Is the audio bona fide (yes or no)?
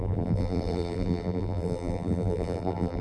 no